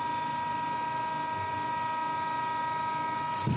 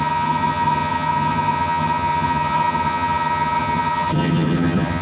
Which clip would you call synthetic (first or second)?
second